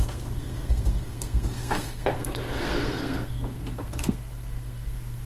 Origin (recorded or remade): remade